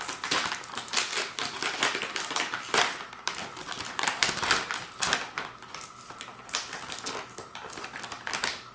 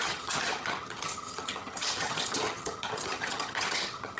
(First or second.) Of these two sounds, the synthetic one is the second